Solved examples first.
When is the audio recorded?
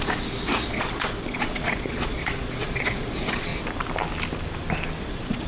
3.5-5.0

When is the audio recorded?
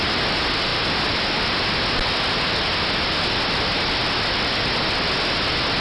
0.0-5.8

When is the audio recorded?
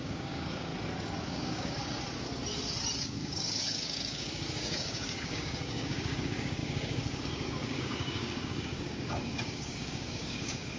0.7-1.3; 1.8-3.0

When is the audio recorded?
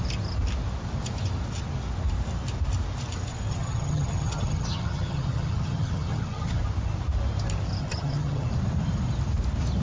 0.0-3.5; 6.6-7.8; 8.5-9.8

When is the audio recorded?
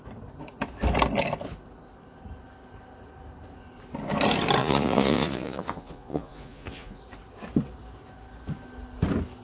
0.0-4.6; 7.0-9.4